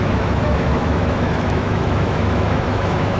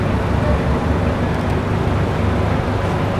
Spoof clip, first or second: first